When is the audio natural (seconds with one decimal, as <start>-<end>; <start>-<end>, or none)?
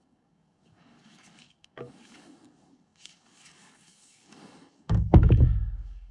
none